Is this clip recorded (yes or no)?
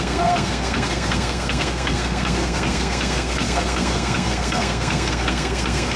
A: no